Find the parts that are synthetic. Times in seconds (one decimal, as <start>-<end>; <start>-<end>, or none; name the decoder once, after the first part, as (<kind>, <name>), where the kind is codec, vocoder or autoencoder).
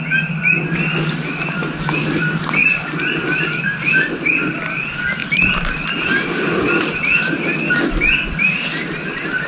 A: 2.6-3.2 (vocoder, BigVGAN v2)